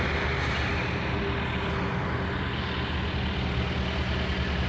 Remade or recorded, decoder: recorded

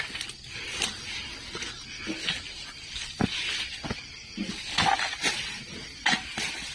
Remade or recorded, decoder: recorded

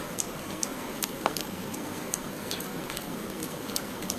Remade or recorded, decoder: remade, codec, SNAC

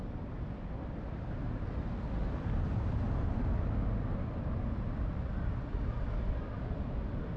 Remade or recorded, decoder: recorded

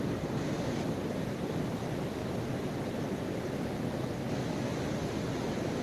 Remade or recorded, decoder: recorded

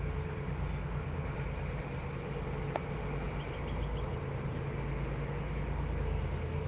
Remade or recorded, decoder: recorded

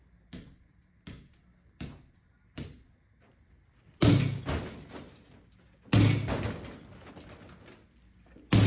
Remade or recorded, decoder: recorded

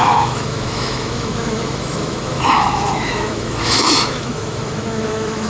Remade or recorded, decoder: remade, autoencoder, DAC-VAE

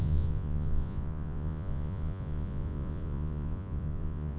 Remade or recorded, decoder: remade, vocoder, Vocos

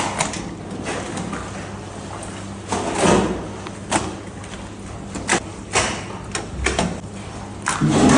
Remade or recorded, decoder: recorded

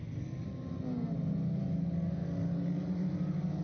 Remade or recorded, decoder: recorded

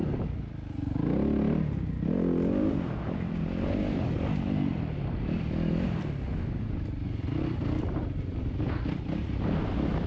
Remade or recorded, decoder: recorded